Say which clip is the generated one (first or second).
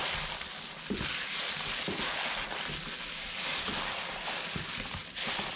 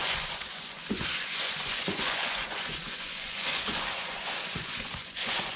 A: second